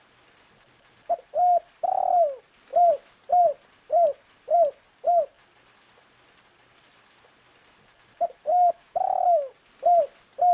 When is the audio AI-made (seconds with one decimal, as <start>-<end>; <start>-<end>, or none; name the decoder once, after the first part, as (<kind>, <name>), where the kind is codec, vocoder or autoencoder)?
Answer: 8.5-9.5 (autoencoder, DAC-VAE)